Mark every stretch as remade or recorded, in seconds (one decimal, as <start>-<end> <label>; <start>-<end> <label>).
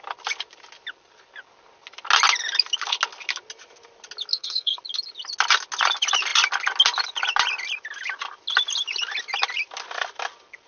0.0-4.3 recorded; 4.3-4.8 remade; 4.8-10.7 recorded